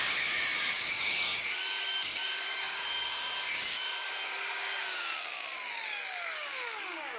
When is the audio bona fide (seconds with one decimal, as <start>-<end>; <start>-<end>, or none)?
none